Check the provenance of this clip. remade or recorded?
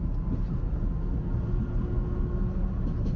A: recorded